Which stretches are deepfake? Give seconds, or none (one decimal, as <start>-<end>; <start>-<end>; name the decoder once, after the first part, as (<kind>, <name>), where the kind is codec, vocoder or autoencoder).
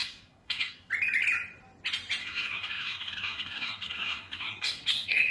0.0-0.9 (codec, SNAC); 2.2-5.3